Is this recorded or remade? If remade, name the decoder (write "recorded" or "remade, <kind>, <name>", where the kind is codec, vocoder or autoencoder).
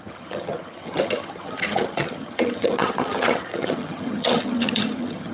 remade, vocoder, HiFi-GAN